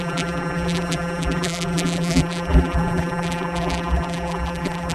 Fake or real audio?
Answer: fake